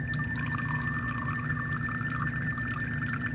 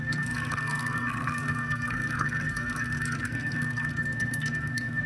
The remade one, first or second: second